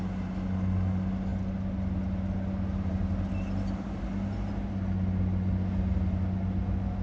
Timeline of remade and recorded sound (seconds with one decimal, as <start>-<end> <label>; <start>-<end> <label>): 0.0-7.0 recorded